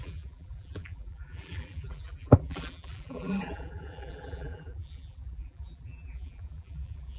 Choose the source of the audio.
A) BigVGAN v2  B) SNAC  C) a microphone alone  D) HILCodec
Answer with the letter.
A